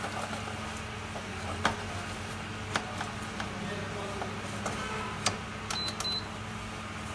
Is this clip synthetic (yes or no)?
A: no